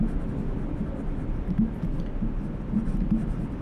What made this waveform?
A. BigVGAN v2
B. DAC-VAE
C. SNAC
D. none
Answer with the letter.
D